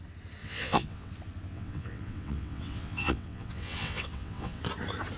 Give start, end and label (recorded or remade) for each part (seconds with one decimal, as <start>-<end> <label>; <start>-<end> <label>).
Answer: 0.0-0.4 recorded; 0.4-1.1 remade; 1.1-1.5 recorded; 1.5-4.6 remade; 4.6-5.2 recorded